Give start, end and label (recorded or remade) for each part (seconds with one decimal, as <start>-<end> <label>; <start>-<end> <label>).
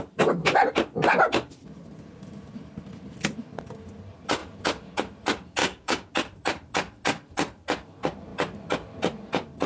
0.0-5.6 recorded; 5.6-6.1 remade; 6.1-9.7 recorded